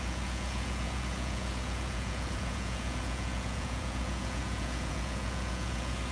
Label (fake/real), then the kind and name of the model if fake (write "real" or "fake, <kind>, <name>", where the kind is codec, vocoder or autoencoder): fake, vocoder, Vocos